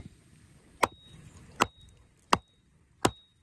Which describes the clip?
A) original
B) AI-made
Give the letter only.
A